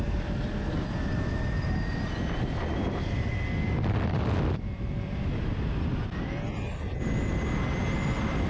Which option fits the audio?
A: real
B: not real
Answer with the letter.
A